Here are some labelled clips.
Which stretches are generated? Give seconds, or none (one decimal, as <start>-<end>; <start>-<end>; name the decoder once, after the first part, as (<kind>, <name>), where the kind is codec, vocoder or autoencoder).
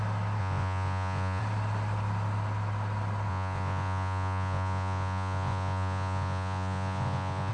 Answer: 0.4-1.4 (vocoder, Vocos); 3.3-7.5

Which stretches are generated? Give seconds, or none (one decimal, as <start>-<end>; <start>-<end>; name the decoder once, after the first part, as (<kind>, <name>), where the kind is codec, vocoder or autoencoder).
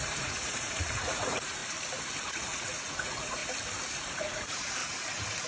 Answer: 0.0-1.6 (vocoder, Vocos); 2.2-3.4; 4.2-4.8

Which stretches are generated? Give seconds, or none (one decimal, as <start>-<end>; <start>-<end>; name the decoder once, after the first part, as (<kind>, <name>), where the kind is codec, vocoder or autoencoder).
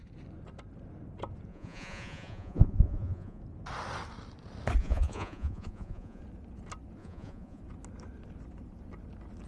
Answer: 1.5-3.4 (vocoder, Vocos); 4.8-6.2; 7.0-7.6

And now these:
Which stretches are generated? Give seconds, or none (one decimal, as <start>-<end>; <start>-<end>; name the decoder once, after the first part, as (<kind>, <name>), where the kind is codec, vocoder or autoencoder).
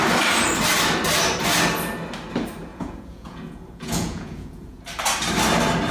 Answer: 2.7-4.8 (vocoder, Vocos)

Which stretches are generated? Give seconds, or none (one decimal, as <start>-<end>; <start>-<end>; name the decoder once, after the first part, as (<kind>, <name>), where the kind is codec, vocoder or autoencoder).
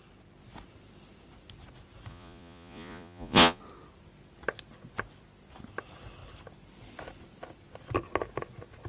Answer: 2.1-3.6 (vocoder, Vocos)